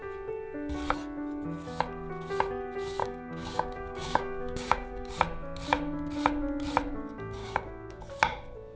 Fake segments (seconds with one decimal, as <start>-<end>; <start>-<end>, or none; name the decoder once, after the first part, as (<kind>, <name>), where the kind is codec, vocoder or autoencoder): 3.0-5.1 (codec, DAC); 7.4-8.0

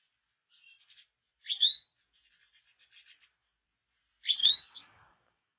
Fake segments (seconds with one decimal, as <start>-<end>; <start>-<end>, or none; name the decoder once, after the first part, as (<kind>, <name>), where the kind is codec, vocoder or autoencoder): 4.4-5.6 (codec, DAC)